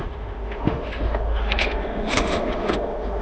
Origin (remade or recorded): remade